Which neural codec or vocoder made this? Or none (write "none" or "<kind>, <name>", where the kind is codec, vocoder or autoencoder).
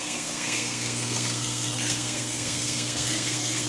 codec, SNAC